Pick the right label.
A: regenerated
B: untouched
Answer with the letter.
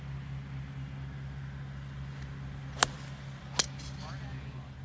B